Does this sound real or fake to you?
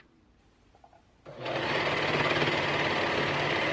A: real